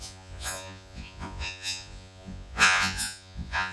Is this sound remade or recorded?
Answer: remade